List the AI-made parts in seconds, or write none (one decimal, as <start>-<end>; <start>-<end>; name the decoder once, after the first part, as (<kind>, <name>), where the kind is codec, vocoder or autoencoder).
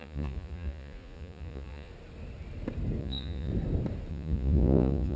0.0-1.9 (vocoder, Vocos); 3.0-3.5; 4.1-5.2